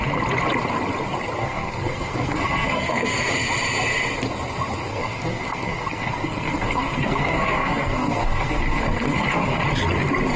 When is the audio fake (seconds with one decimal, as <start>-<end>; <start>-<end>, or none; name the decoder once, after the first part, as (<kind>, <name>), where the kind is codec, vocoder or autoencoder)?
1.4-3.3 (codec, SNAC); 4.9-9.6